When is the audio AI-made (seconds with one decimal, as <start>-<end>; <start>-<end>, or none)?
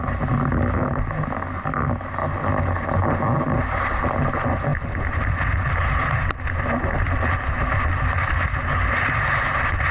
none